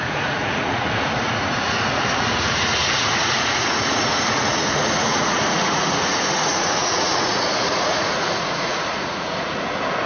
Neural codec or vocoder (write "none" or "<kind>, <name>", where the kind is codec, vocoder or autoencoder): vocoder, Vocos